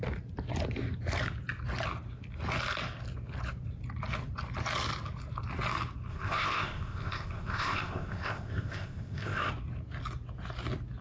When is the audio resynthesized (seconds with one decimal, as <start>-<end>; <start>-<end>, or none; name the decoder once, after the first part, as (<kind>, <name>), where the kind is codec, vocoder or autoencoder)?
6.1-9.5 (codec, ZipCodec)